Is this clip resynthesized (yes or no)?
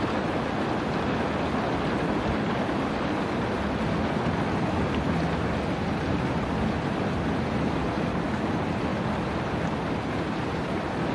no